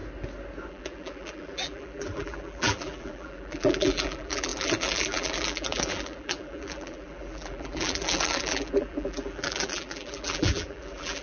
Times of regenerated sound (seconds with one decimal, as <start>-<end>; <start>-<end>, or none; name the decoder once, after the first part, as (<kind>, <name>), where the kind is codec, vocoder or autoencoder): 0.7-11.2 (vocoder, BigVGAN v2)